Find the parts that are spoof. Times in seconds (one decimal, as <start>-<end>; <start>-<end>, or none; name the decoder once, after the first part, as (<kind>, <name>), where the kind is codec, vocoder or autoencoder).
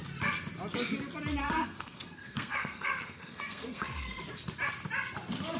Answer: 1.4-4.2 (codec, SNAC)